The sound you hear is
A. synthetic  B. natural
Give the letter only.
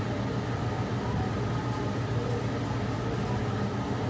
B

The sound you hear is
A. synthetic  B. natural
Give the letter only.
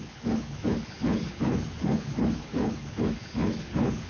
A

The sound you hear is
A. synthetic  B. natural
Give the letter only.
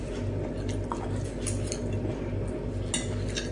B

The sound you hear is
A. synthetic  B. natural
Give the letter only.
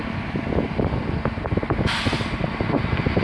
B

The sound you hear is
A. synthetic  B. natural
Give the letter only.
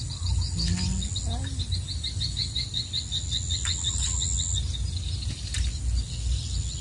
B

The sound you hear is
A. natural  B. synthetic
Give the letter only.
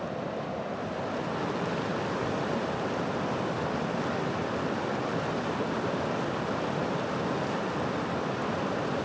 A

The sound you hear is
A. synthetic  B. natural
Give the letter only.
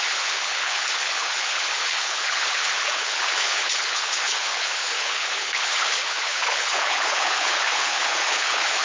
A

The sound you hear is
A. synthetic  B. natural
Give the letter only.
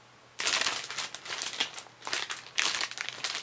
B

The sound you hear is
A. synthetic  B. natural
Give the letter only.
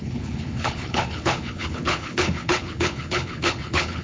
A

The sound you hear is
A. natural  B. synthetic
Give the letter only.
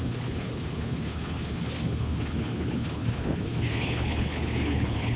B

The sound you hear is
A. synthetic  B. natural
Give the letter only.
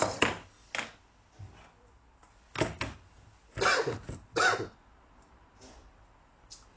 B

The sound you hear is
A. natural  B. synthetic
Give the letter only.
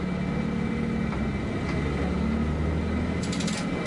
A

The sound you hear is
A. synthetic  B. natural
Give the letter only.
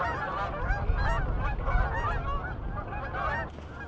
B